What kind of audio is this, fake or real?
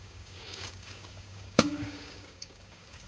fake